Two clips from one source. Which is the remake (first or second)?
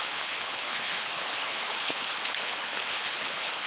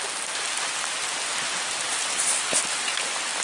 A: first